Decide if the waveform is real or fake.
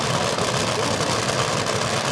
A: real